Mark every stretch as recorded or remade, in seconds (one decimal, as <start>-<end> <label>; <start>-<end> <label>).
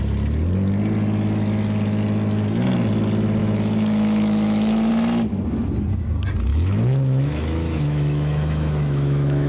0.0-3.4 recorded; 3.4-4.9 remade; 4.9-6.5 recorded; 6.5-9.5 remade